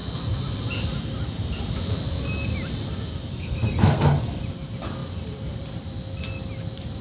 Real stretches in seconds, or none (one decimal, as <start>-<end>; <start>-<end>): 0.0-3.3; 4.4-7.0